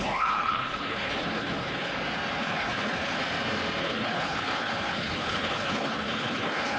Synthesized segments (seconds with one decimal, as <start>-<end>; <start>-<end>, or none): 0.0-1.9; 2.4-3.2; 3.8-6.8